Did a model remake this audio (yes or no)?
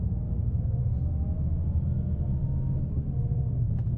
no